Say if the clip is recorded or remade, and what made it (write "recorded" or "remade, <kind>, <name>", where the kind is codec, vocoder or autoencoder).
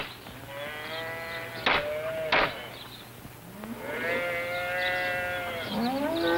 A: recorded